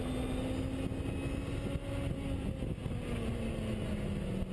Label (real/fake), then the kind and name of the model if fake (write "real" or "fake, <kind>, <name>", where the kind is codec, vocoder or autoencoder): real